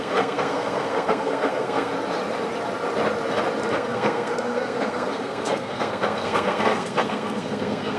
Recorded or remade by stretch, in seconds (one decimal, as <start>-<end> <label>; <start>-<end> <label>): 0.0-1.9 remade; 1.9-3.7 recorded; 3.7-8.0 remade